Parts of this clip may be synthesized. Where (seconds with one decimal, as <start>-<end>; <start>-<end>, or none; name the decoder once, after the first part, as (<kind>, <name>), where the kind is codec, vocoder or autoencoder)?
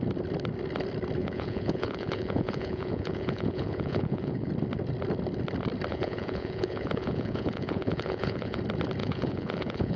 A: 1.2-4.5 (vocoder, Vocos); 5.9-8.6; 9.0-10.0